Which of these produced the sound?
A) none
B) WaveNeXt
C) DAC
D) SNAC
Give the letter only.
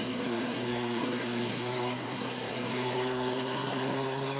D